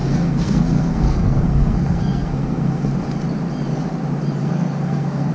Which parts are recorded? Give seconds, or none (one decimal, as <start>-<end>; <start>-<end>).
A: 2.9-4.4